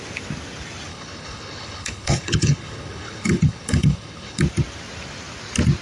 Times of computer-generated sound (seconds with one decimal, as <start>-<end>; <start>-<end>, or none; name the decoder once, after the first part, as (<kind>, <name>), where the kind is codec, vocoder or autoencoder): 0.9-4.4 (codec, HILCodec)